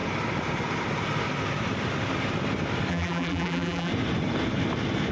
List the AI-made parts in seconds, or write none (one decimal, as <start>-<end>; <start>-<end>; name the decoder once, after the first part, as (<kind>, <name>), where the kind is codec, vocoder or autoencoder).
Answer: 2.9-3.9 (vocoder, BigVGAN v2)